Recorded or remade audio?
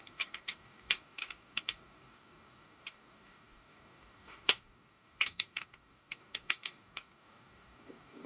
remade